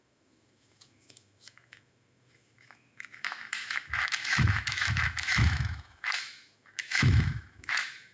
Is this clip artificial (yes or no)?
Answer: yes